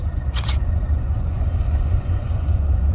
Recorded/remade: remade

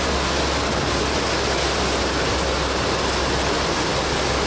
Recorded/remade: recorded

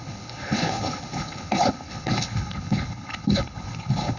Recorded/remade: remade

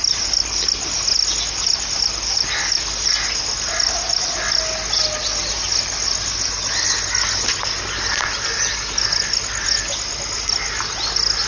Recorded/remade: recorded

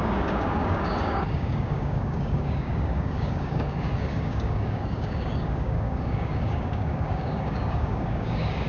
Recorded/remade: remade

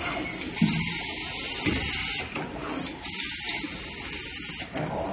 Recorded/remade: recorded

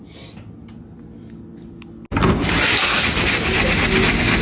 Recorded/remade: recorded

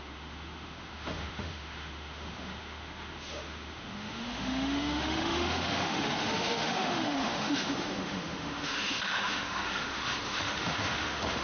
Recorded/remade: remade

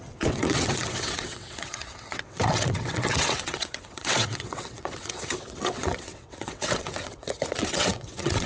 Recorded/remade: remade